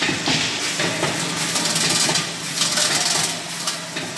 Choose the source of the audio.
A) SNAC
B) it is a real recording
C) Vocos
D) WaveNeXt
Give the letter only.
B